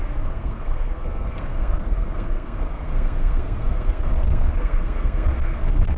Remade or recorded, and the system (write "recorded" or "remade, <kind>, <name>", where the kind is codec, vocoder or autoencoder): remade, codec, SNAC